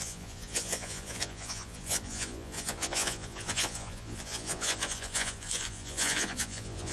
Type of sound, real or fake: fake